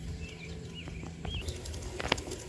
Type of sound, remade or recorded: recorded